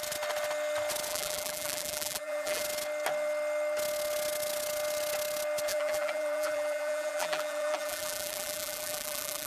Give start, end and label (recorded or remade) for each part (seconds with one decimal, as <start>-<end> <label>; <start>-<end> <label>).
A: 0.0-1.1 recorded; 1.1-2.6 remade; 2.6-5.7 recorded; 5.7-9.5 remade